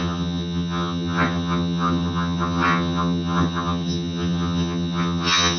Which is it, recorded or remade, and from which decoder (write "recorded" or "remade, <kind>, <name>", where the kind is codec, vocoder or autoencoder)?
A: remade, vocoder, HiFi-GAN